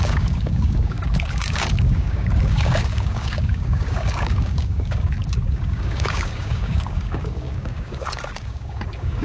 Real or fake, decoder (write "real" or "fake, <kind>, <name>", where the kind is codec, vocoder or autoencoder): fake, codec, DAC